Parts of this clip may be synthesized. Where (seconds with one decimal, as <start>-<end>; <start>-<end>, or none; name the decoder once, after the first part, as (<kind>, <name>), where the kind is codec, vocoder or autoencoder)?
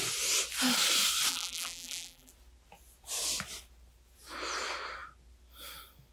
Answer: 1.3-2.3 (vocoder, BigVGAN v2)